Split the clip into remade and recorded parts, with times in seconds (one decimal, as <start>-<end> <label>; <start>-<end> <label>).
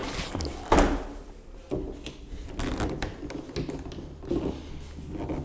0.0-5.4 recorded